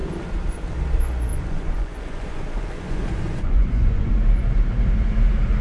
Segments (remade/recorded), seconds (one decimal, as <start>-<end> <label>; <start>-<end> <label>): 0.0-1.3 recorded; 1.3-4.1 remade; 4.1-5.6 recorded

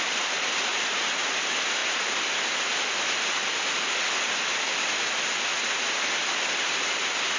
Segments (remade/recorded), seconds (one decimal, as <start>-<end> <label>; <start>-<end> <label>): 0.0-0.7 recorded; 0.7-1.3 remade; 1.3-7.4 recorded

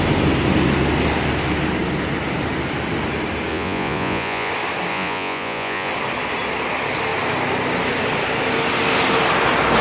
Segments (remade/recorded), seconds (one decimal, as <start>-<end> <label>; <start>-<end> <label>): 0.0-3.5 recorded; 3.5-4.5 remade; 4.5-4.9 recorded; 4.9-5.9 remade; 5.9-9.8 recorded